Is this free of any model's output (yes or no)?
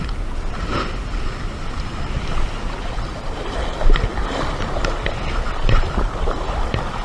yes